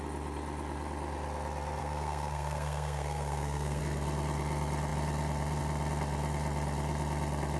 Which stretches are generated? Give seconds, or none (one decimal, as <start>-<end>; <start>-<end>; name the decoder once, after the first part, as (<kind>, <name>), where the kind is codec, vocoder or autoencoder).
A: 1.8-3.8 (codec, SNAC)